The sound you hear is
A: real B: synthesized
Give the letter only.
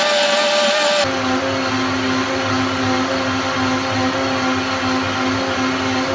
A